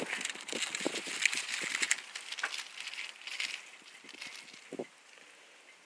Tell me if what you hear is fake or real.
real